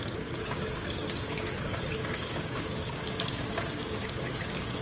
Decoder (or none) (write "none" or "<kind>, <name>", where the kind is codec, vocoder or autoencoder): codec, DAC